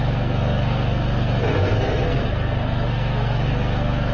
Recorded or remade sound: remade